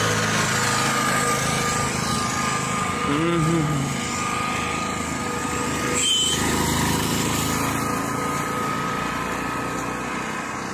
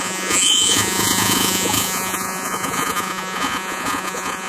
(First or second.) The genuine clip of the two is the first